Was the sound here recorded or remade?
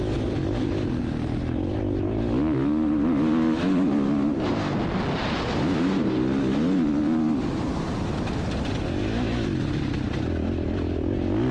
recorded